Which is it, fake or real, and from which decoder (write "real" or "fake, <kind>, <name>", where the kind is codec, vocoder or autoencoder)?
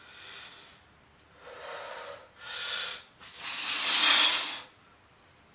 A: real